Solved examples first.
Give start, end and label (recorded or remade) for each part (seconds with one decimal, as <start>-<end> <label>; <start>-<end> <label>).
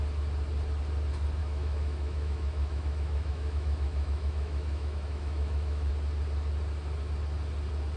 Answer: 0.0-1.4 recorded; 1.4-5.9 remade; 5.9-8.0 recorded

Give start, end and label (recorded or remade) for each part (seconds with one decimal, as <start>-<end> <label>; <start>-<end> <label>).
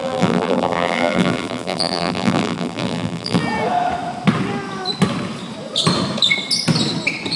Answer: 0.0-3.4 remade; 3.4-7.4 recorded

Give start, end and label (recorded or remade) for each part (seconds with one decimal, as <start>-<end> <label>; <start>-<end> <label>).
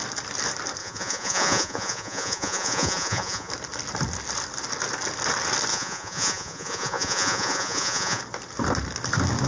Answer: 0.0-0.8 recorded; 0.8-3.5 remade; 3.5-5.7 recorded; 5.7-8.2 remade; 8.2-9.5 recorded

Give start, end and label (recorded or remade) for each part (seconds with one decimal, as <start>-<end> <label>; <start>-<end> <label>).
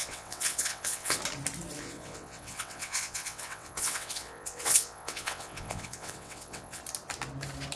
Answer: 0.0-1.2 remade; 1.2-1.8 recorded; 1.8-6.8 remade; 6.8-7.8 recorded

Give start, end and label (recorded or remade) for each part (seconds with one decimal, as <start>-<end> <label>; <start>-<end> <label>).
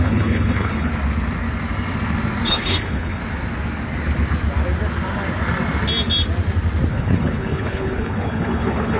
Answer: 0.0-0.9 remade; 0.9-2.5 recorded; 2.5-3.2 remade; 3.2-6.9 recorded; 6.9-9.0 remade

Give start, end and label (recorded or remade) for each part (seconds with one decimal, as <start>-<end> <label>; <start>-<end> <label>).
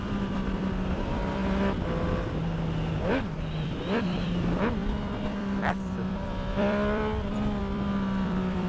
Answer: 0.0-1.4 remade; 1.4-3.1 recorded; 3.1-8.7 remade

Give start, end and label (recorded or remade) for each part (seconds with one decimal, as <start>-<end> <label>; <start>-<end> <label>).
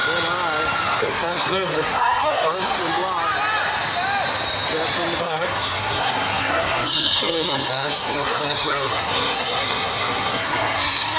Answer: 0.0-1.0 recorded; 1.0-2.8 remade; 2.8-5.2 recorded; 5.2-11.2 remade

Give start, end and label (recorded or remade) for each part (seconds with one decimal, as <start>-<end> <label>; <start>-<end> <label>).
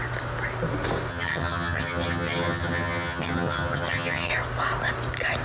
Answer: 0.0-1.1 recorded; 1.1-4.3 remade; 4.3-5.4 recorded